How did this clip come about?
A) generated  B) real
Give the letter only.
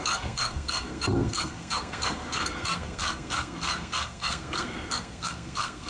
A